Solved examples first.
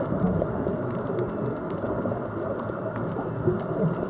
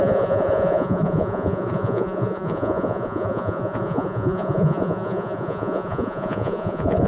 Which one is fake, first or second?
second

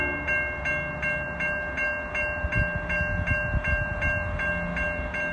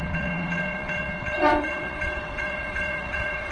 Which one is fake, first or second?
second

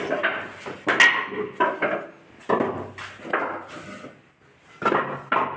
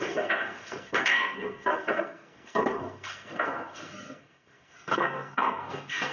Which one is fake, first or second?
second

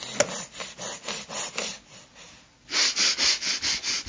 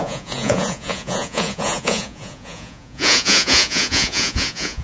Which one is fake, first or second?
second